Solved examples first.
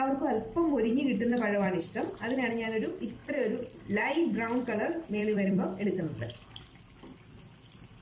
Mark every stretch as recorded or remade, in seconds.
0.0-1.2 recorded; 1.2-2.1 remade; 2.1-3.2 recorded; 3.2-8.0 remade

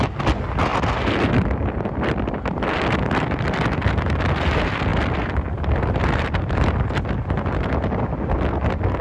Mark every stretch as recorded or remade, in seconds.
0.0-0.7 recorded; 0.7-3.9 remade; 3.9-4.9 recorded; 4.9-6.6 remade; 6.6-9.0 recorded

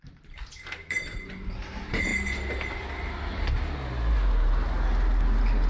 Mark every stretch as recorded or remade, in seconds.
0.0-2.1 remade; 2.1-5.7 recorded

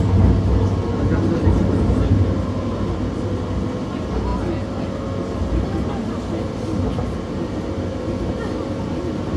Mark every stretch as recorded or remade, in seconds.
0.0-9.4 recorded